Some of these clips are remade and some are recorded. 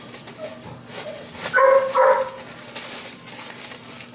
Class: recorded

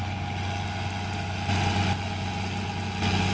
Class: recorded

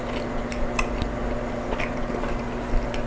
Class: recorded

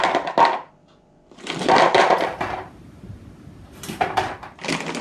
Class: recorded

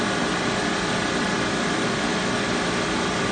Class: recorded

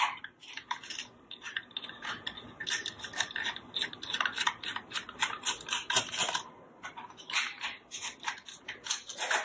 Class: recorded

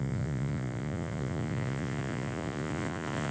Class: remade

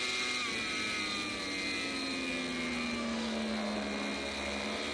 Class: recorded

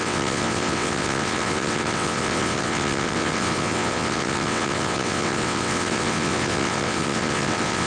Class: remade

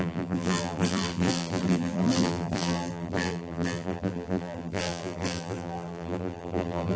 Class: remade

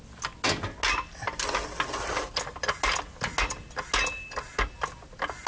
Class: recorded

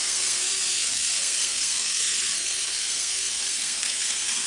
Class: remade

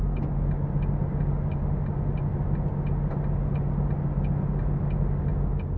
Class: recorded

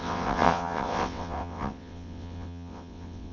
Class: remade